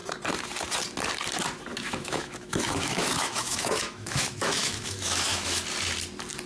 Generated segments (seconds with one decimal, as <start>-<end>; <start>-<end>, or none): 1.7-5.6

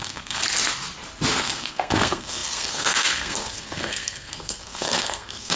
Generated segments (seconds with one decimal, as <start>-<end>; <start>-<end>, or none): 0.0-0.4; 1.4-5.6

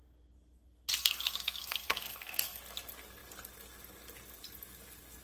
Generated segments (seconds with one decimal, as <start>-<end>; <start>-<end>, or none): 1.0-2.6

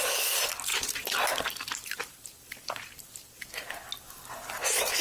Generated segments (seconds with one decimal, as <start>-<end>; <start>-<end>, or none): 0.7-3.7

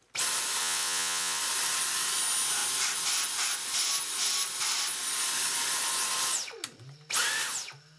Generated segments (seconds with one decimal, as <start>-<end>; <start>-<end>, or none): 0.6-1.4

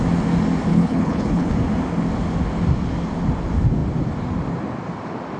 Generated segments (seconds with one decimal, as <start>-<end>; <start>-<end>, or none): 0.7-1.5

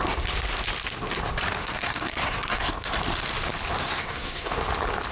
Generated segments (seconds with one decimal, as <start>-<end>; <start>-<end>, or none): 1.6-2.7; 3.8-4.5